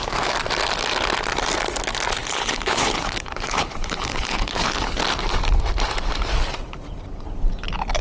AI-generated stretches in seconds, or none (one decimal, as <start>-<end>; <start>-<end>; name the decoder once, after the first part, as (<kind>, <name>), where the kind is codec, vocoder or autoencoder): 2.2-5.0 (codec, HILCodec)